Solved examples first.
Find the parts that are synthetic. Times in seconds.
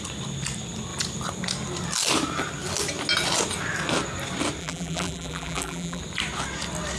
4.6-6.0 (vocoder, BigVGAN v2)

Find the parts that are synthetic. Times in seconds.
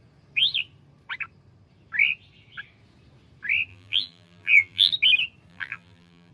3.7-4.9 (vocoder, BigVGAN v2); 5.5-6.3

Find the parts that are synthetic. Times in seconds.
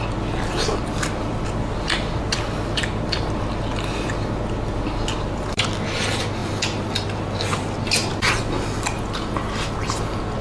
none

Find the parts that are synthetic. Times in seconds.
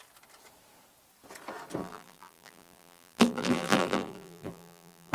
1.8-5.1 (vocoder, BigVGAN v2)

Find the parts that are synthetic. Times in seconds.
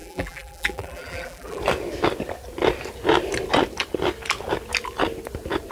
0.0-1.6 (vocoder, BigVGAN v2)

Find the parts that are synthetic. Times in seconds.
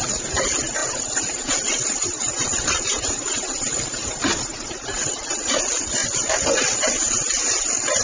0.8-5.6 (vocoder, BigVGAN v2)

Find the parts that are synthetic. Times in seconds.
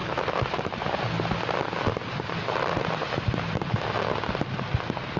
0.0-1.1 (vocoder, BigVGAN v2); 1.9-3.7